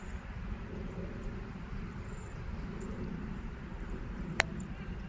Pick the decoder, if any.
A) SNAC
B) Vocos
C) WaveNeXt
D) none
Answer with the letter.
D